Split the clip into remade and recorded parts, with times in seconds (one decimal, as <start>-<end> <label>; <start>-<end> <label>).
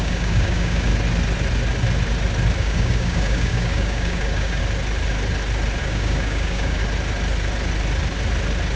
0.0-0.9 remade; 0.9-2.6 recorded; 2.6-4.6 remade; 4.6-5.8 recorded; 5.8-6.8 remade; 6.8-8.8 recorded